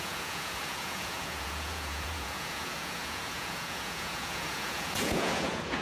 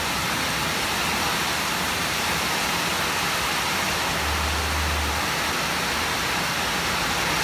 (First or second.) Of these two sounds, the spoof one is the first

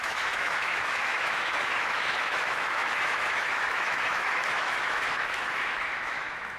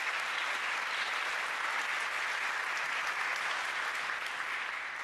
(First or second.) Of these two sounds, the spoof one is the first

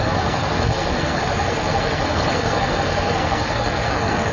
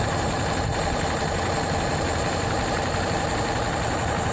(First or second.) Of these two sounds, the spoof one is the first